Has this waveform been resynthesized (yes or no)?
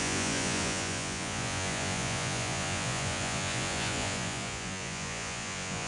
yes